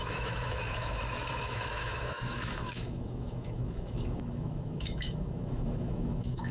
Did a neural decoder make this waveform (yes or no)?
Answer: yes